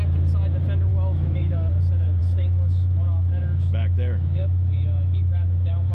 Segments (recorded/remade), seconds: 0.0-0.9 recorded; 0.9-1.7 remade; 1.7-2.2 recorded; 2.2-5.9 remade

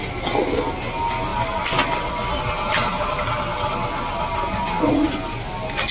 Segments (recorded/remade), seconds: 0.0-5.9 recorded

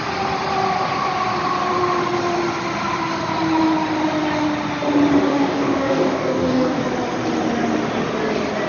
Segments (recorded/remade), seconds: 0.0-5.3 recorded; 5.3-6.8 remade; 6.8-8.7 recorded

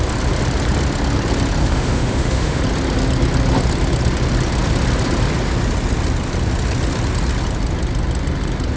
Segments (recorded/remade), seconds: 0.0-1.6 recorded; 1.6-2.6 remade; 2.6-8.8 recorded

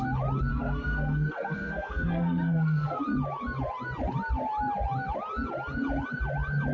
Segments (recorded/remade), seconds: 0.0-0.5 recorded; 0.5-3.0 remade; 3.0-6.7 recorded

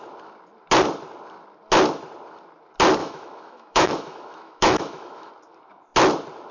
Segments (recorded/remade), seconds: 0.0-3.0 recorded; 3.0-5.3 remade; 5.3-6.5 recorded